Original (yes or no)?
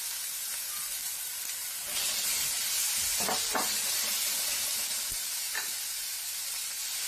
yes